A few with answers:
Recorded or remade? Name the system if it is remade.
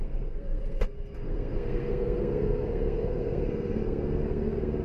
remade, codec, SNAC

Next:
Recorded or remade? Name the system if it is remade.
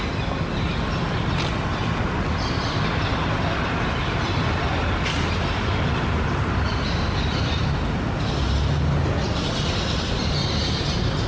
recorded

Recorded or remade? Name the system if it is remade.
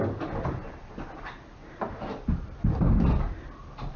recorded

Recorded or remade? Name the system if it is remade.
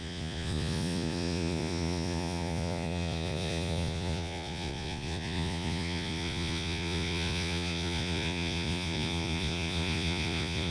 remade, vocoder, Vocos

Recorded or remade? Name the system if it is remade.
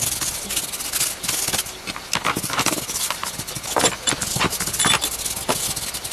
recorded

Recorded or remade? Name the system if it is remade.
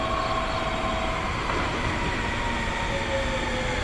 recorded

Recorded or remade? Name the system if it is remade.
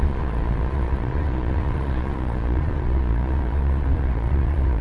remade, vocoder, Vocos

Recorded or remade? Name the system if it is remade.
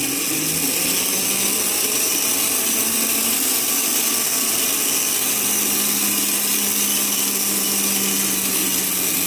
recorded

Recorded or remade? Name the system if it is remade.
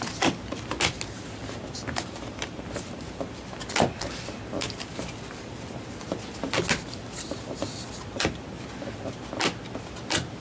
recorded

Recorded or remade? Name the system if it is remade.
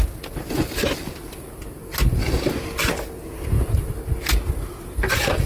recorded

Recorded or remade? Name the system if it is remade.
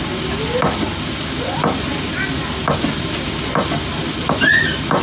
recorded